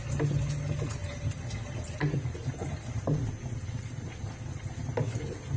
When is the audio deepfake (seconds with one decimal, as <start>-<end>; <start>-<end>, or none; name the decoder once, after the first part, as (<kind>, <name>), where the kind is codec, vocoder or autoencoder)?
none